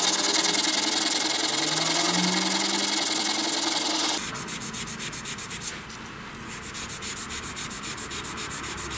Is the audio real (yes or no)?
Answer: yes